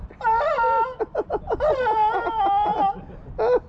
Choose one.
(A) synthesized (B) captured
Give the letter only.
B